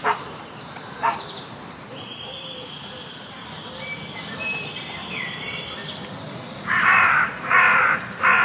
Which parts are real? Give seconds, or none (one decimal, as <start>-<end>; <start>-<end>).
3.6-5.1; 5.8-6.6